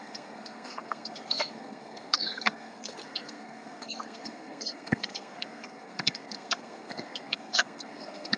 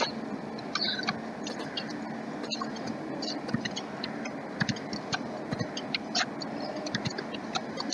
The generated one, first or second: first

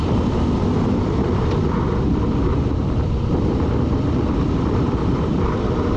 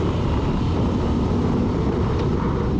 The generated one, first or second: first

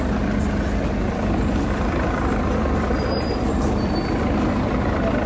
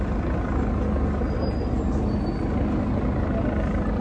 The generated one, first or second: first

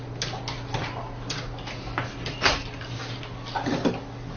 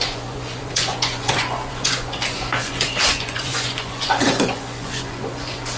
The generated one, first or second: second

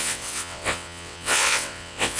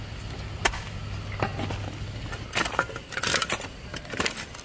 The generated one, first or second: first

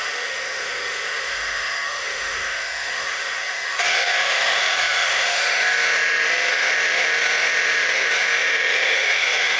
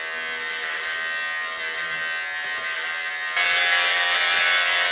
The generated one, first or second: first